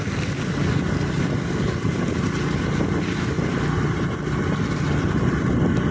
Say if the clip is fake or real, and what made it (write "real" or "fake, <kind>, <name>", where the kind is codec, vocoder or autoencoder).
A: real